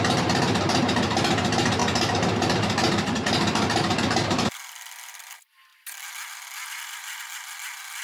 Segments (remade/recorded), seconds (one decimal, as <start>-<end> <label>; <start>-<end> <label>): 0.0-8.0 recorded